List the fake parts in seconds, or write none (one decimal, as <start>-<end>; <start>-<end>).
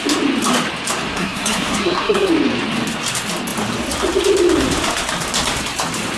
1.1-2.3